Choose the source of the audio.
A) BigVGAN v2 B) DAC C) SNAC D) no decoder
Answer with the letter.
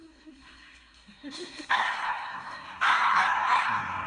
C